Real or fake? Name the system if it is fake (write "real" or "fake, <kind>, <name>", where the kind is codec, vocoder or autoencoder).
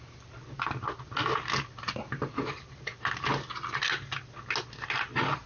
real